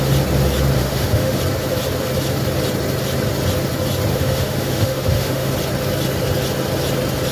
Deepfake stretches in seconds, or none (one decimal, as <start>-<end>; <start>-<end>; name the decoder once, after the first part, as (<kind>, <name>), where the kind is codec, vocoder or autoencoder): 0.8-1.4 (autoencoder, DAC-VAE); 4.1-5.5